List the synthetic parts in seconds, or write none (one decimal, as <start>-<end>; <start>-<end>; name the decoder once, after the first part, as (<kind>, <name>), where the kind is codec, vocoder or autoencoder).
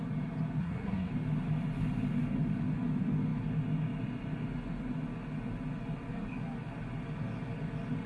0.6-1.1 (codec, SNAC)